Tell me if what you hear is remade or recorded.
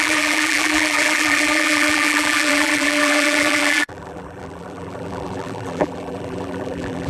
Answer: remade